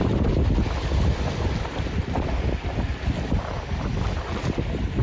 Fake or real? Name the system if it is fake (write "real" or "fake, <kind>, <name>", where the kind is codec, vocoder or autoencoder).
real